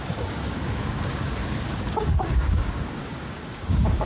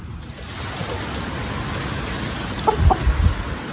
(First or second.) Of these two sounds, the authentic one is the second